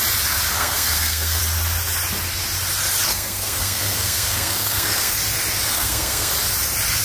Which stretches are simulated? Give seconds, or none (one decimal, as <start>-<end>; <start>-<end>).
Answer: 0.5-1.4; 3.1-5.2; 5.7-6.3